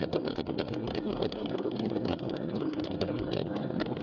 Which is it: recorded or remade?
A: remade